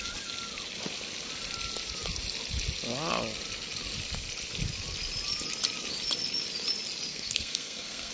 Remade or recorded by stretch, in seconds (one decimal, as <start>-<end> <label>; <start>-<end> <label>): 0.0-7.1 recorded; 7.1-8.1 remade